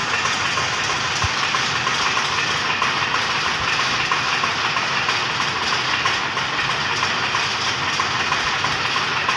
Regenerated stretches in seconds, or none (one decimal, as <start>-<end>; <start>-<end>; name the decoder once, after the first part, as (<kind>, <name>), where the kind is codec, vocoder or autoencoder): none